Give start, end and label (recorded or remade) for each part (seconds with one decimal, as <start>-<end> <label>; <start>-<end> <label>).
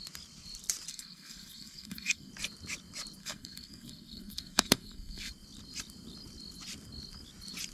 0.0-0.9 recorded; 0.9-2.3 remade; 2.3-3.2 recorded; 3.2-5.3 remade; 5.3-7.7 recorded